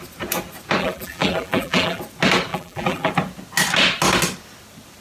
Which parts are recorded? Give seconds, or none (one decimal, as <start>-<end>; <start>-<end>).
0.0-0.8; 2.0-2.5; 3.1-5.0